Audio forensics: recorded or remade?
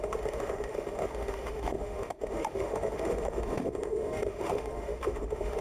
remade